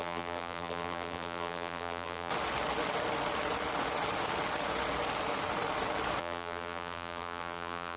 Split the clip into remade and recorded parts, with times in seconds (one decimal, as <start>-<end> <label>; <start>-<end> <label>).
0.0-2.3 remade; 2.3-6.2 recorded; 6.2-8.0 remade